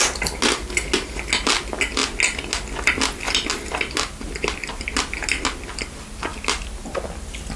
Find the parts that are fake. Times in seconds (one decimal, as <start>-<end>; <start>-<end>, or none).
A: none